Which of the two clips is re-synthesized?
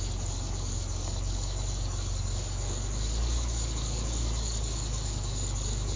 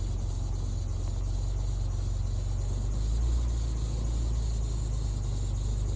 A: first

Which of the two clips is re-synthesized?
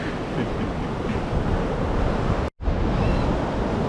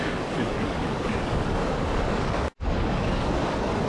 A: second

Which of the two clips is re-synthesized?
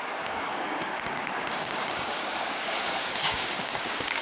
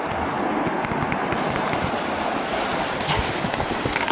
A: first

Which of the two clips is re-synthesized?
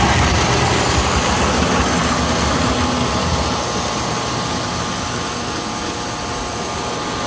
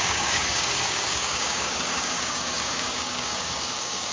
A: second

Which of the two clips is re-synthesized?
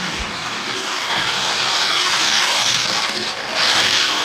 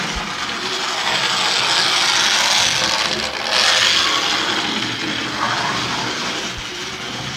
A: first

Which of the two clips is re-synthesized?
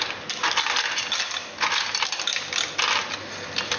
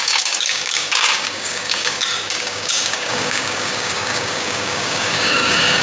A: second